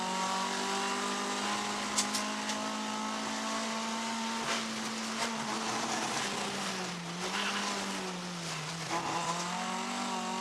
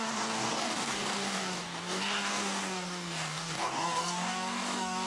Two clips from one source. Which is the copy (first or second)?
second